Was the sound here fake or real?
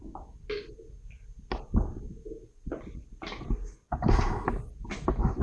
real